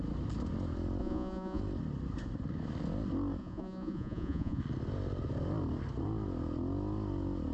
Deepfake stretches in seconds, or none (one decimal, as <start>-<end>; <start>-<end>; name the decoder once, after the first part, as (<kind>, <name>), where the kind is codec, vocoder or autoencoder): 1.0-1.6 (vocoder, Vocos); 3.4-4.6